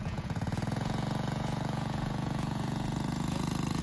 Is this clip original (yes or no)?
no